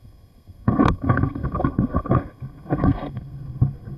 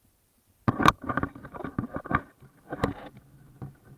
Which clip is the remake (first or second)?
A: first